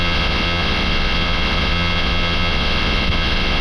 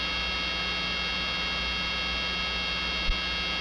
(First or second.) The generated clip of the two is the first